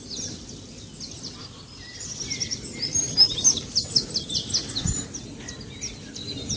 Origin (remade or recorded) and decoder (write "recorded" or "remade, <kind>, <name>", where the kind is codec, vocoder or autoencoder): recorded